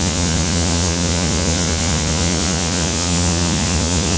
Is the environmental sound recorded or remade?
remade